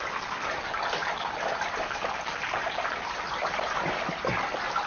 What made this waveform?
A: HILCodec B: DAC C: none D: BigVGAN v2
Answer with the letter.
C